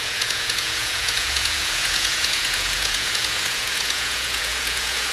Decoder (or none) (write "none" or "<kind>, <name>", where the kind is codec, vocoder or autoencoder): vocoder, Vocos